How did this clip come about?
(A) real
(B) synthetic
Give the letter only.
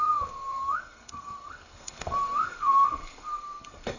B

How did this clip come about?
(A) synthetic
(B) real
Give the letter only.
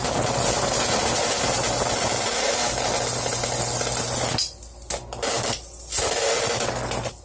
B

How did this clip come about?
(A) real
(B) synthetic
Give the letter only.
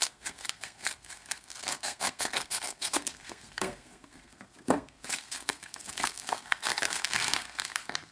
B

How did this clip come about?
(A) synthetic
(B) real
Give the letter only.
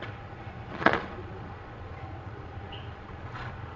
A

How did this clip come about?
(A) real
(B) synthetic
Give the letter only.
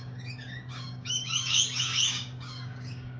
B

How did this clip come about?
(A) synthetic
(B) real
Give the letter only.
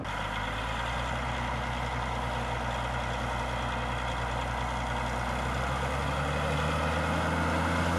B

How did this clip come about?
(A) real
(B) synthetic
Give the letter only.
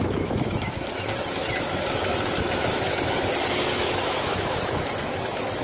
B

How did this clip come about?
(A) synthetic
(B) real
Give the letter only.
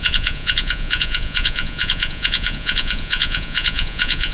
A